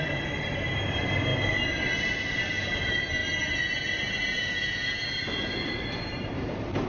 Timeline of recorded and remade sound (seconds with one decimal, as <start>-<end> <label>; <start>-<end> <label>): 0.0-1.3 remade; 1.3-2.0 recorded; 2.0-3.2 remade; 3.2-3.9 recorded; 3.9-6.9 remade